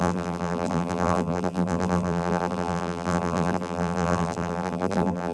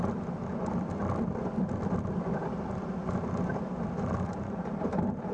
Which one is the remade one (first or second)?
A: first